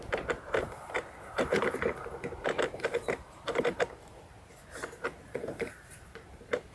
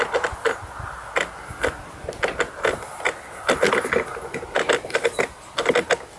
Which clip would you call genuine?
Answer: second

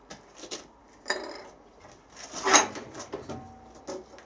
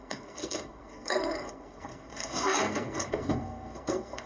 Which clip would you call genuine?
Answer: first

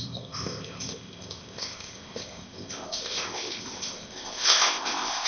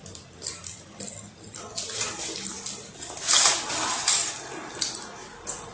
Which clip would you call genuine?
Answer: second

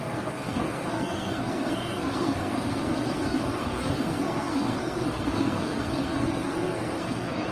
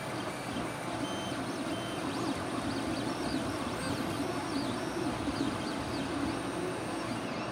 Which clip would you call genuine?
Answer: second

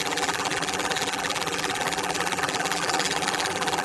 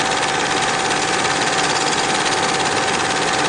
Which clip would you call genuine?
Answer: second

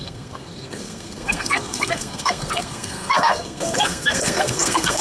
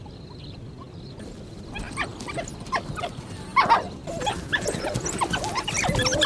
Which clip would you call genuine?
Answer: second